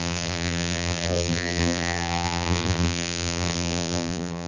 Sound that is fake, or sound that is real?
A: fake